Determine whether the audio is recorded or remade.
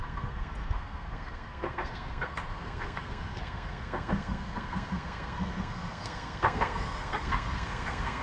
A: remade